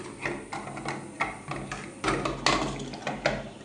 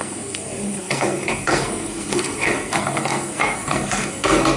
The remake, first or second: second